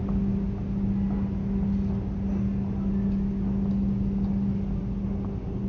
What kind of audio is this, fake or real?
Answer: real